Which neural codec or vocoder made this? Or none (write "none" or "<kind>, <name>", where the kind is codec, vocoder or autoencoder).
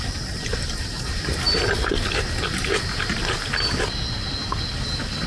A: none